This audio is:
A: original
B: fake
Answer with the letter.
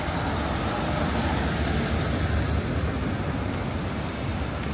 A